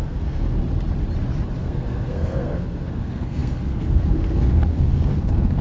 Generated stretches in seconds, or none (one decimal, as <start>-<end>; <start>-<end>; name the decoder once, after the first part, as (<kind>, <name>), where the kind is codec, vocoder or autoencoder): 0.0-0.6 (codec, SNAC); 1.6-5.6